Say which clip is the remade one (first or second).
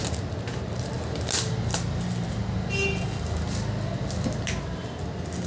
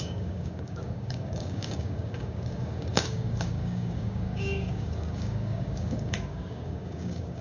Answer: second